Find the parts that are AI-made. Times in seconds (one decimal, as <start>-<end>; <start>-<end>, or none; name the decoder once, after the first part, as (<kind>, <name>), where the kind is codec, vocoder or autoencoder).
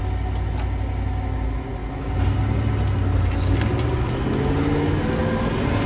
none